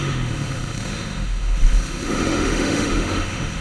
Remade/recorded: remade